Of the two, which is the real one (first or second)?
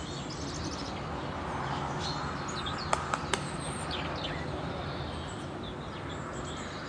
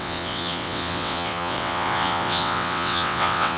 first